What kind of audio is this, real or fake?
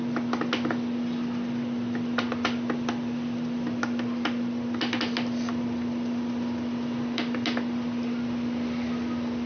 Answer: real